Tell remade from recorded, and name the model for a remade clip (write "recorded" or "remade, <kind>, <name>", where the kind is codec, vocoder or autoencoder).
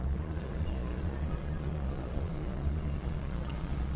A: remade, vocoder, Vocos